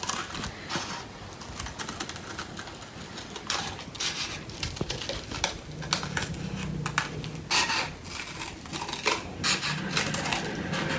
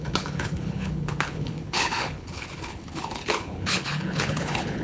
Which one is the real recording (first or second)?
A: first